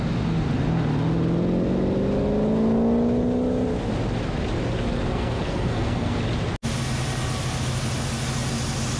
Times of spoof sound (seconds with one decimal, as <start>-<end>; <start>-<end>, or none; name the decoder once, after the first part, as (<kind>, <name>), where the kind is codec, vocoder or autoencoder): 5.1-6.2 (codec, SNAC)